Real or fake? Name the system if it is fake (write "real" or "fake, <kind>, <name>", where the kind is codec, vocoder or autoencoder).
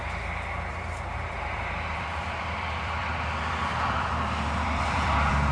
fake, vocoder, BigVGAN v2